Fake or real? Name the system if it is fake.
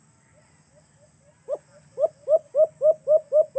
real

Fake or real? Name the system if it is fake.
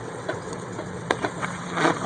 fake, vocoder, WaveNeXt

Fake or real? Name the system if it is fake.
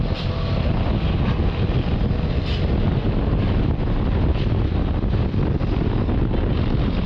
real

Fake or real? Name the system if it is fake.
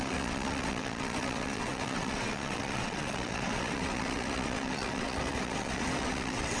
fake, vocoder, WaveNeXt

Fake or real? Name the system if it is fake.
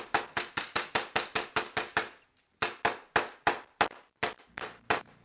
real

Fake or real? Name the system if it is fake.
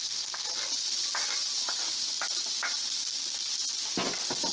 real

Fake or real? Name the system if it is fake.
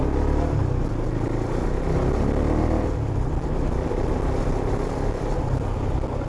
real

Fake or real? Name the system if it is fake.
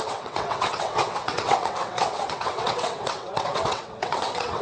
fake, vocoder, WaveNeXt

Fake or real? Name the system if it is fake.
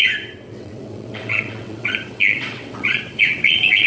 fake, vocoder, WaveNeXt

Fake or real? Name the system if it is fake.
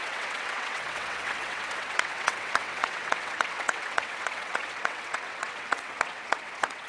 fake, vocoder, WaveNeXt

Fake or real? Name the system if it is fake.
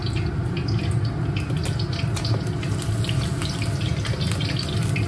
real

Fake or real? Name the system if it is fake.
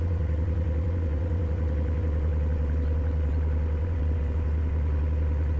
fake, vocoder, WaveNeXt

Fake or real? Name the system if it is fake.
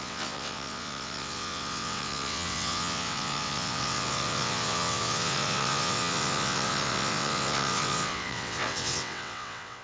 fake, vocoder, WaveNeXt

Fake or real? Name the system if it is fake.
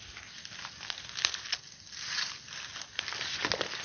real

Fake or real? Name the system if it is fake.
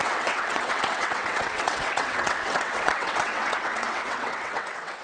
fake, vocoder, WaveNeXt